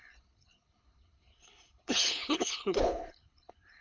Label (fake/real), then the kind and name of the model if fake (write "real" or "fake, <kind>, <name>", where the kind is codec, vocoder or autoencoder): fake, codec, HILCodec